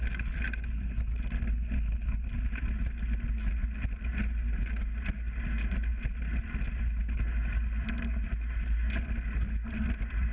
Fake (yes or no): no